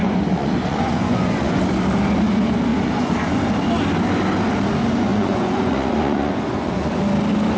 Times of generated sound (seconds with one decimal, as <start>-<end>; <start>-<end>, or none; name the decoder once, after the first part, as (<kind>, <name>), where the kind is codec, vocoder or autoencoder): 0.0-1.6 (vocoder, Vocos); 2.7-3.4; 5.1-7.0